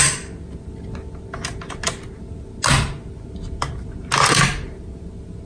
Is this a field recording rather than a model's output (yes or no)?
yes